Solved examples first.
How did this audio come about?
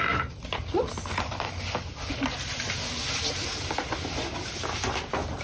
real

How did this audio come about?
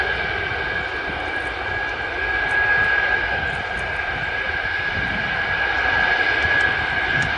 real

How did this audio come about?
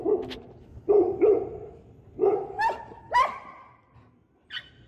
real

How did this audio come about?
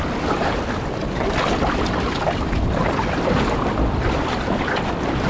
real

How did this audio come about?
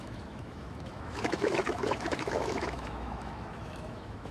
fake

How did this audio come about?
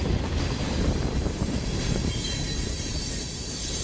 fake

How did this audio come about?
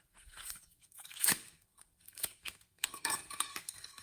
fake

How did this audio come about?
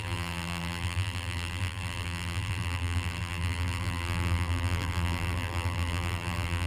fake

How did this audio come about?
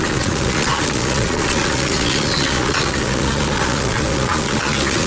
fake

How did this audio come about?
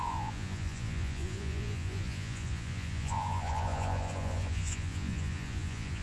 fake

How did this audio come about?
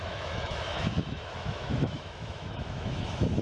fake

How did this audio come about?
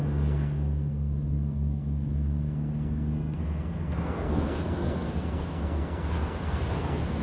fake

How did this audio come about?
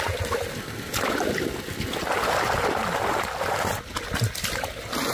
real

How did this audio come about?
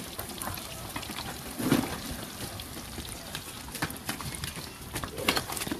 real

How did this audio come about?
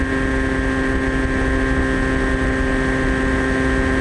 real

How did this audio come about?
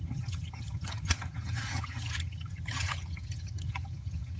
fake